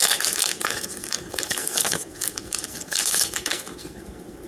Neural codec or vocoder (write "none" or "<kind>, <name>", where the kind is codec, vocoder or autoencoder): codec, SNAC